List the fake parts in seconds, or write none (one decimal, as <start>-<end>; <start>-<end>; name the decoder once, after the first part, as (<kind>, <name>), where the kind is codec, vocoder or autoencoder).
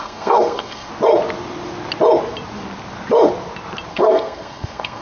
0.0-0.9 (codec, SNAC); 3.9-5.0